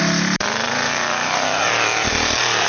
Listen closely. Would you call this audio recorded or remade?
remade